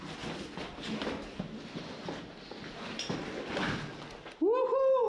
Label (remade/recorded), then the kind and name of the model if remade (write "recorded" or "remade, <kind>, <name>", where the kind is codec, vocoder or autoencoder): recorded